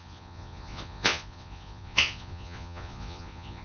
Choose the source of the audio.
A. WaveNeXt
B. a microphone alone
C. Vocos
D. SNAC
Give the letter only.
C